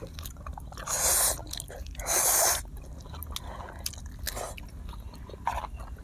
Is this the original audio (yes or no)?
yes